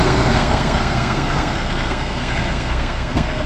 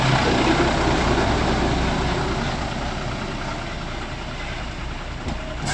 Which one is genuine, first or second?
second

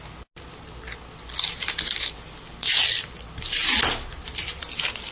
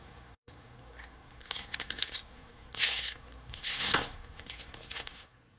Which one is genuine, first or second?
first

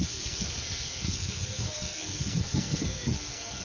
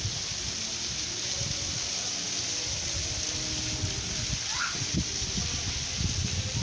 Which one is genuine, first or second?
second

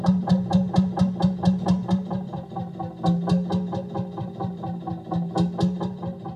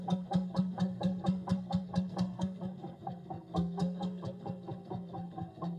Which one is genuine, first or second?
first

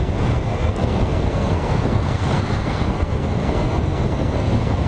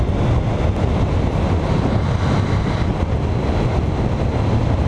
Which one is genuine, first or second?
second